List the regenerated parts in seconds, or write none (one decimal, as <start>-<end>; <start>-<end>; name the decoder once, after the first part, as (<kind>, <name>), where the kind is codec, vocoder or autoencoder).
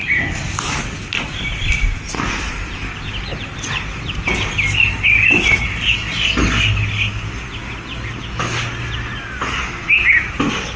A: none